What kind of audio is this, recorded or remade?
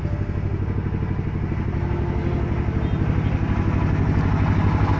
recorded